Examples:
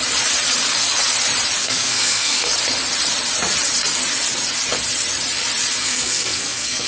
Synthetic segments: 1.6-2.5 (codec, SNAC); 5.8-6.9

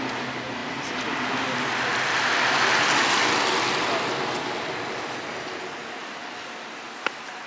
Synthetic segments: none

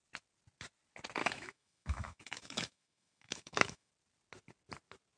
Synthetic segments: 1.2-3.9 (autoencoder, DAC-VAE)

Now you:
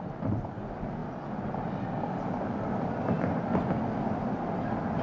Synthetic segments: none

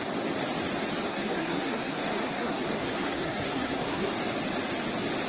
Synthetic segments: 1.1-4.1 (codec, SNAC)

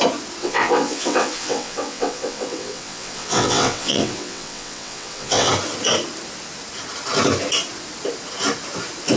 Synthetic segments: 0.4-5.5 (vocoder, WaveNeXt)